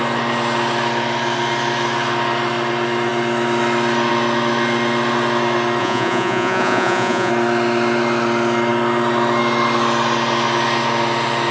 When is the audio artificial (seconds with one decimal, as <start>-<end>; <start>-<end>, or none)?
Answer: 5.8-7.3